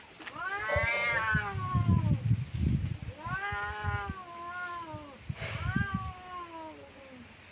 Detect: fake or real real